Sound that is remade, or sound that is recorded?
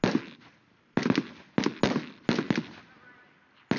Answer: recorded